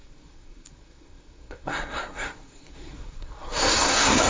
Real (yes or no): no